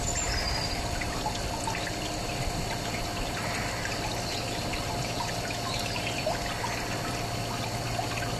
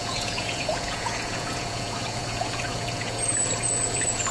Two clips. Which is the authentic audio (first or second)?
first